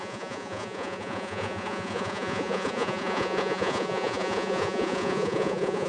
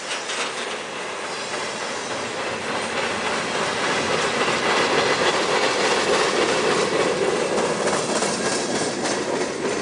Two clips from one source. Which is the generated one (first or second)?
first